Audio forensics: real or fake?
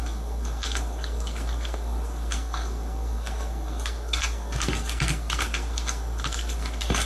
fake